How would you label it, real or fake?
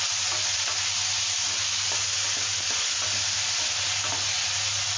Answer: real